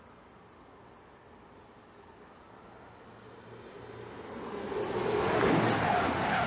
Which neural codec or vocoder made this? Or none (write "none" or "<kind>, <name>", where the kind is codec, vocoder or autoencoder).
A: none